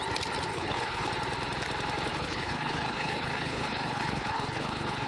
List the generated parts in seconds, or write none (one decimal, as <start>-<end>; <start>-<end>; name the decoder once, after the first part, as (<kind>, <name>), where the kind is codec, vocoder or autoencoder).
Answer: 0.5-1.1 (codec, HILCodec); 2.1-5.1